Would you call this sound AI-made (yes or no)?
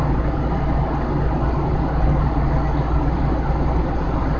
no